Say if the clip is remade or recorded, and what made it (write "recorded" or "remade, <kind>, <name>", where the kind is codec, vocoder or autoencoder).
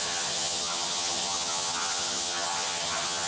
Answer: remade, vocoder, HiFi-GAN